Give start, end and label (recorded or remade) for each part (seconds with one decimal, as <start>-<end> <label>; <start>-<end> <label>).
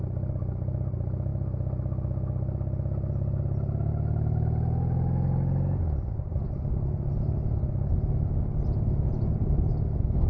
0.0-10.3 recorded